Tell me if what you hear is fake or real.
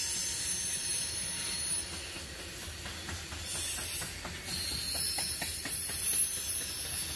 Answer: real